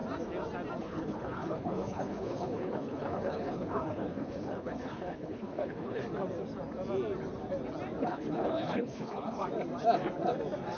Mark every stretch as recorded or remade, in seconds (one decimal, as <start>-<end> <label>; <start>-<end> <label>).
0.0-0.8 recorded; 0.8-6.0 remade; 6.0-8.0 recorded; 8.0-9.4 remade; 9.4-10.8 recorded